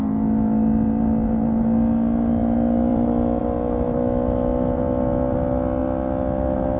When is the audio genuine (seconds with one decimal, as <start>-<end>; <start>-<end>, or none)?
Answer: 0.0-2.4; 3.4-5.8